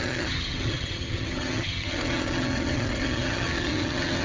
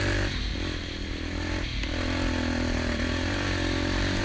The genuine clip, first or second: second